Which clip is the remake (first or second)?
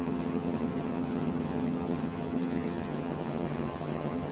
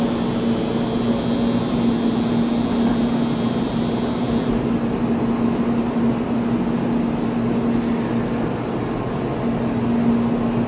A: first